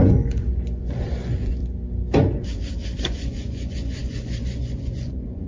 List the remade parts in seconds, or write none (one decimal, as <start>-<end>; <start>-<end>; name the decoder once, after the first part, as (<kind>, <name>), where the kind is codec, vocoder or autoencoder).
0.0-1.6 (vocoder, Vocos); 3.0-5.5